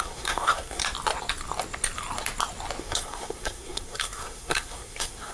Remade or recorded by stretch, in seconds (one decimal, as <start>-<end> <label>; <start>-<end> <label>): 0.0-0.8 remade; 0.8-2.8 recorded; 2.8-5.3 remade